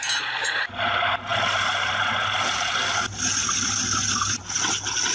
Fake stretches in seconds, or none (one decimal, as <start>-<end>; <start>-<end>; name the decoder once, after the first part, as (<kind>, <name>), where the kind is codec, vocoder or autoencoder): none